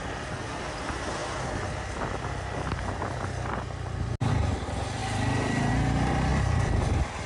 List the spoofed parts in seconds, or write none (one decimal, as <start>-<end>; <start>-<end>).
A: 6.3-7.3

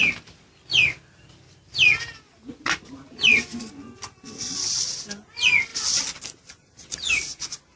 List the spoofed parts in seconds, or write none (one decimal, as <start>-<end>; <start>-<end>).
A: none

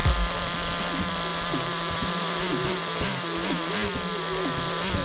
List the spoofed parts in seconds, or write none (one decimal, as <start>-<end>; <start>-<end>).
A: 1.3-3.7

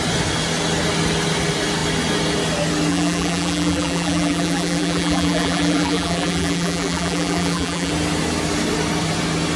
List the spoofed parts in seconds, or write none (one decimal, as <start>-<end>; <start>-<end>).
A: 2.9-7.9

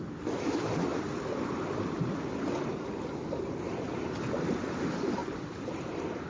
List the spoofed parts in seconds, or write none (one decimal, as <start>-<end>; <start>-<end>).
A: none

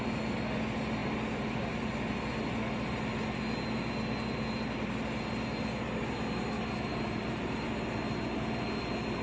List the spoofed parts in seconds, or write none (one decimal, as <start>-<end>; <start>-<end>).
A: 6.9-7.7

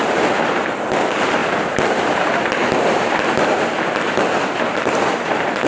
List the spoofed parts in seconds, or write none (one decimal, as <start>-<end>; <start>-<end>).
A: 0.6-1.4; 4.7-5.7

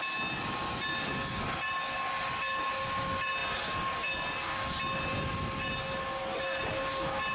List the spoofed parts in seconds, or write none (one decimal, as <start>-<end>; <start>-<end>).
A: none